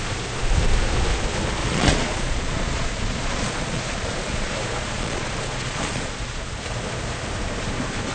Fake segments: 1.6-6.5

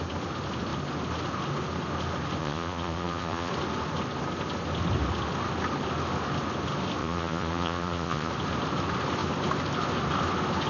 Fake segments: 2.4-3.5; 7.0-8.3

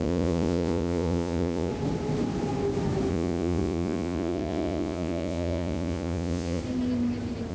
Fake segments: 0.0-1.7; 3.1-6.6